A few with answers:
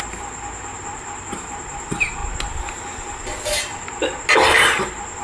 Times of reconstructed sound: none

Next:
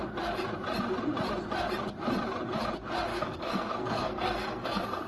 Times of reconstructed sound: 3.1-5.1 (codec, SNAC)

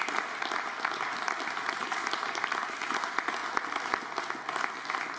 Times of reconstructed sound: none

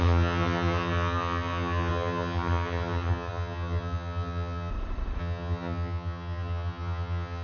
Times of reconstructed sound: 0.0-4.7 (vocoder, HiFi-GAN); 5.2-7.4

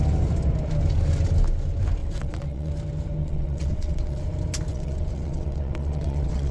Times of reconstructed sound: 2.0-2.7 (vocoder, WaveNeXt); 3.2-4.2; 4.7-6.5